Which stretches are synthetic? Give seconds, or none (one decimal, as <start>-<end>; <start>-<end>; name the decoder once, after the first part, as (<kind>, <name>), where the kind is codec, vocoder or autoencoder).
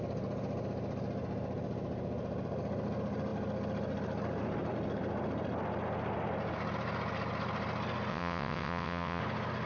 8.1-9.2 (vocoder, WaveNeXt)